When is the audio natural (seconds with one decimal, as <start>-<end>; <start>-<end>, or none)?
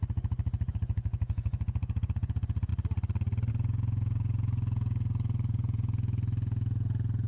0.0-0.7; 2.7-3.5